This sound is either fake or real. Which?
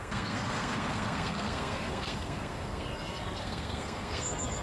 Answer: fake